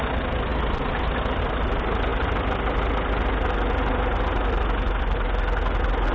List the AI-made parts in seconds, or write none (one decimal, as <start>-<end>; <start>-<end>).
none